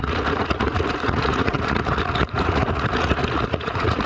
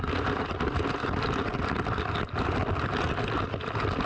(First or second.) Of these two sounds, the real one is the second